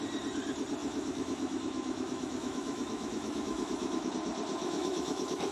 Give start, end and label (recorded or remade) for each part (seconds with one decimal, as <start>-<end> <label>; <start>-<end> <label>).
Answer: 0.0-0.8 recorded; 0.8-4.1 remade; 4.1-4.6 recorded; 4.6-5.5 remade